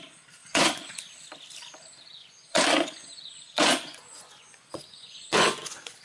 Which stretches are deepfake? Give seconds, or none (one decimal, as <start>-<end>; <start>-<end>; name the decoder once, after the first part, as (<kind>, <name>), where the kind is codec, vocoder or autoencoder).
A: 0.4-1.0 (vocoder, Vocos); 2.1-6.0